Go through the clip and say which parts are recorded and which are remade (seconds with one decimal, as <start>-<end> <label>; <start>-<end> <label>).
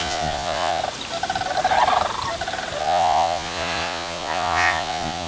0.0-0.8 remade; 0.8-2.8 recorded; 2.8-5.3 remade